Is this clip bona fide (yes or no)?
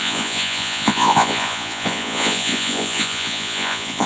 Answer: no